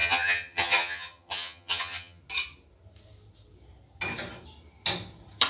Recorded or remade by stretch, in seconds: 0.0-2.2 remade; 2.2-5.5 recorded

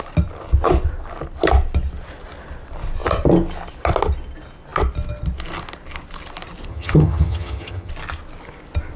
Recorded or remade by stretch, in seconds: 0.0-6.7 recorded; 6.7-7.9 remade; 7.9-9.0 recorded

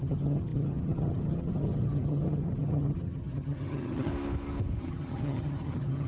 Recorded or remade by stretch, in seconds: 0.0-4.1 remade; 4.1-4.8 recorded; 4.8-6.1 remade

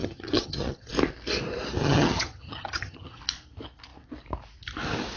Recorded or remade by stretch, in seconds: 0.0-0.9 remade; 0.9-1.8 recorded; 1.8-3.2 remade; 3.2-5.2 recorded

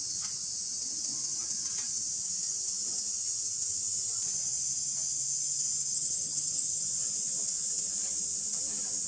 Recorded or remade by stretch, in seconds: 0.0-5.9 recorded; 5.9-6.8 remade; 6.8-9.1 recorded

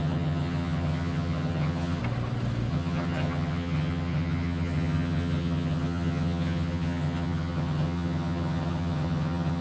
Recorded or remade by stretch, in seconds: 0.0-2.0 remade; 2.0-2.7 recorded; 2.7-9.6 remade

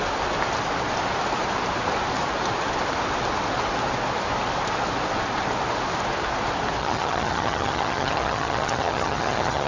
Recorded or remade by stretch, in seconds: 0.0-6.8 recorded; 6.8-9.7 remade